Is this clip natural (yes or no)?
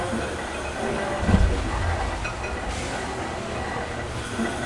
yes